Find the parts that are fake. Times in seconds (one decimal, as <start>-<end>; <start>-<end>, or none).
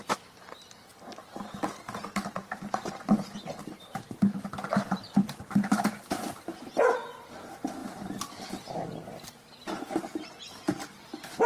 none